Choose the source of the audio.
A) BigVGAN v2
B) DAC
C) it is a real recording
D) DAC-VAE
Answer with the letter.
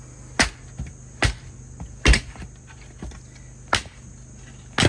C